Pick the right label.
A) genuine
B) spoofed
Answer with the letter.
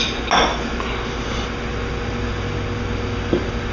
A